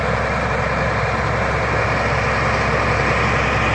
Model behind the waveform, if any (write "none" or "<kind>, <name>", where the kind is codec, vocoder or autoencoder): none